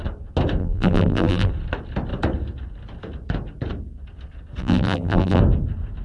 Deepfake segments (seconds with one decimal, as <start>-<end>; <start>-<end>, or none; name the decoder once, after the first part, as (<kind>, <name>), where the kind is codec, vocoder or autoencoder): 0.6-1.5 (vocoder, BigVGAN v2); 4.6-5.4